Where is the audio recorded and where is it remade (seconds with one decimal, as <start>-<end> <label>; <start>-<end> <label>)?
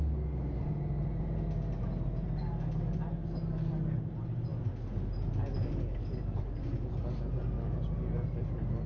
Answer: 0.0-8.9 recorded